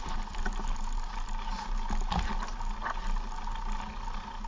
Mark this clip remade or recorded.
recorded